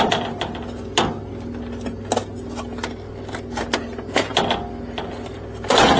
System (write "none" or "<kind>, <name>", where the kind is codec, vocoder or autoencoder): none